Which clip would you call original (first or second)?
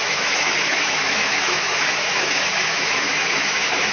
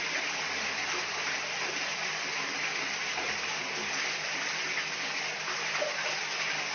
second